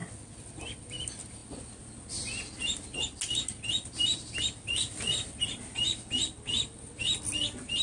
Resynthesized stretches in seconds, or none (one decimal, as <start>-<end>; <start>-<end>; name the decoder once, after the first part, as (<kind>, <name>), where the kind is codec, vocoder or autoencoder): none